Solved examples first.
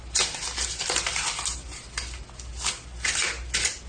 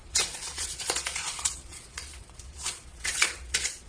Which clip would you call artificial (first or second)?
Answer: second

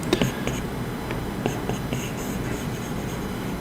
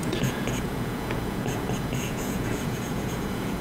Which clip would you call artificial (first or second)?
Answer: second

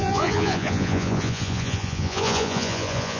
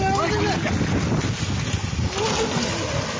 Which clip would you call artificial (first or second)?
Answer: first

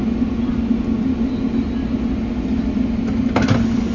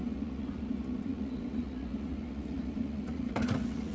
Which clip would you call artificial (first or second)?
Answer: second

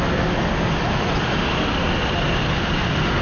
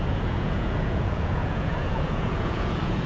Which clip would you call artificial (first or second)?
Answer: second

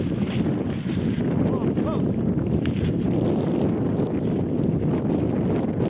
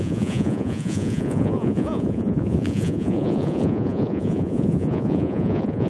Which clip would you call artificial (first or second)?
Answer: second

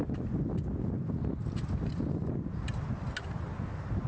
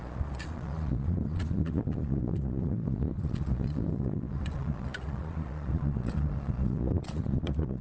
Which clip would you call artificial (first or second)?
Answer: second